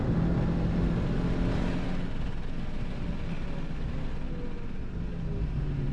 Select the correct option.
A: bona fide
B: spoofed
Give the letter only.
A